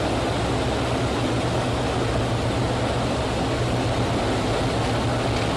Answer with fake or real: real